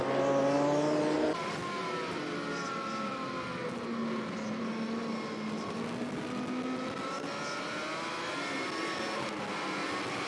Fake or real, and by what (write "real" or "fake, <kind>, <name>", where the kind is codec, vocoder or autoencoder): real